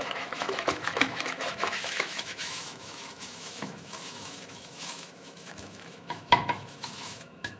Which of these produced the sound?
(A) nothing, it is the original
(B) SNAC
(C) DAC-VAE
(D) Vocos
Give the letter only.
C